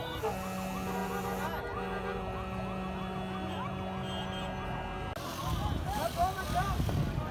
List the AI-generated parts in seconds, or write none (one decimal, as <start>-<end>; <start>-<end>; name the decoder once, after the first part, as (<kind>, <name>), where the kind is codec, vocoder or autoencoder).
none